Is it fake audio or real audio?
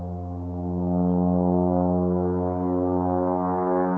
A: real